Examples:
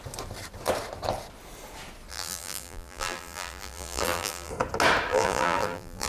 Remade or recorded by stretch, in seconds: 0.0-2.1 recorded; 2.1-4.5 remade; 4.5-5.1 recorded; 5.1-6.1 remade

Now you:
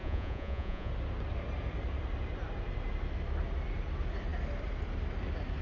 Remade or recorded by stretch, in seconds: 0.0-0.9 remade; 0.9-5.6 recorded

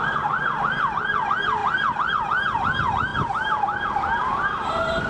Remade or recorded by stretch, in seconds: 0.0-1.6 remade; 1.6-2.1 recorded; 2.1-5.1 remade

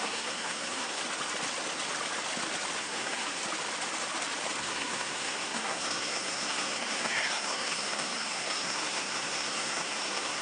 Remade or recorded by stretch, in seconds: 0.0-1.0 remade; 1.0-2.8 recorded; 2.8-3.4 remade; 3.4-4.6 recorded; 4.6-10.4 remade

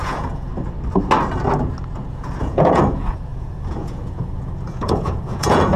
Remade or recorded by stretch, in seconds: 0.0-0.5 remade; 0.5-2.1 recorded; 2.1-5.8 remade

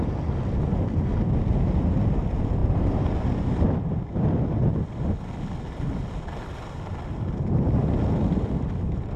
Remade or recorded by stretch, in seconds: 0.0-9.2 recorded